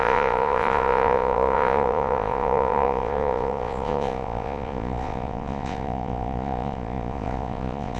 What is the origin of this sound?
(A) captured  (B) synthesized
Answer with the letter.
B